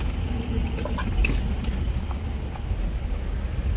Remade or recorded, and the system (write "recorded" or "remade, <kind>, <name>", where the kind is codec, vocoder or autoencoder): recorded